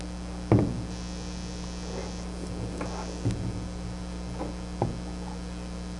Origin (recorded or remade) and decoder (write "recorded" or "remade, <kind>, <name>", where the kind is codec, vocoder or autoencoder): recorded